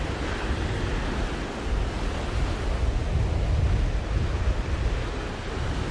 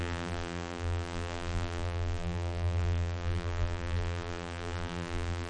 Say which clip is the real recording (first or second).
first